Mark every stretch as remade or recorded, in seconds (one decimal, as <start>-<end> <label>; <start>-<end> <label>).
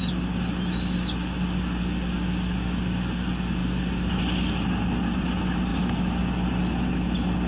0.0-7.5 recorded